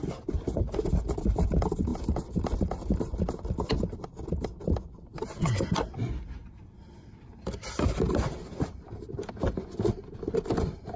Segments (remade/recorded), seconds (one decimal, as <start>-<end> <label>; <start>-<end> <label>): 0.0-11.0 recorded